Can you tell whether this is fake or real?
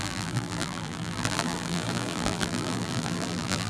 fake